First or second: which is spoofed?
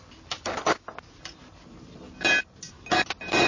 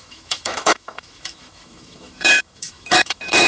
second